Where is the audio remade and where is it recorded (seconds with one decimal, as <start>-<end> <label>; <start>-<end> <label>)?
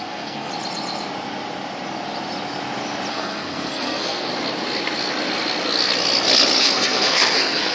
0.0-0.5 remade; 0.5-3.1 recorded; 3.1-4.3 remade; 4.3-6.6 recorded; 6.6-7.7 remade